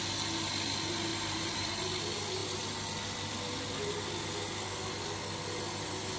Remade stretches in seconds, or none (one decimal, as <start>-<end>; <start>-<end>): 1.1-1.7